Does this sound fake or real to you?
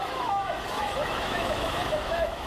fake